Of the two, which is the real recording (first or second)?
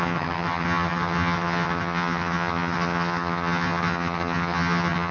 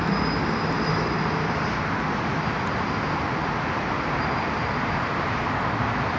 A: second